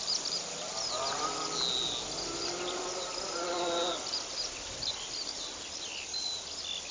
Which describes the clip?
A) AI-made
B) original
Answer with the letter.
B